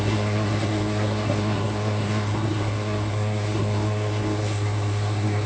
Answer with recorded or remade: remade